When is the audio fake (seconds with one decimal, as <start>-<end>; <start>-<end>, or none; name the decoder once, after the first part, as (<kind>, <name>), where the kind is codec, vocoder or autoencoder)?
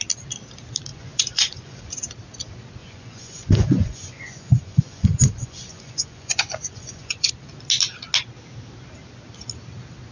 0.9-1.9 (vocoder, Vocos); 2.8-7.3